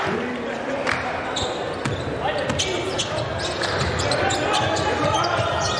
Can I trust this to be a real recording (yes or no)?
yes